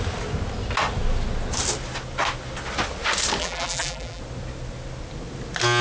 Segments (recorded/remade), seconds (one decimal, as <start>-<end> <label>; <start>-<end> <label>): 0.0-3.4 recorded; 3.4-4.2 remade; 4.2-5.8 recorded